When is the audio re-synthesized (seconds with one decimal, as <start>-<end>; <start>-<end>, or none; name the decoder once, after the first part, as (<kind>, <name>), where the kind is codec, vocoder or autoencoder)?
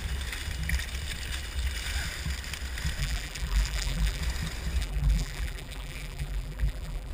3.0-4.2 (vocoder, BigVGAN v2); 4.8-7.1